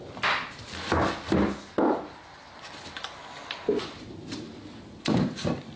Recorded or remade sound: recorded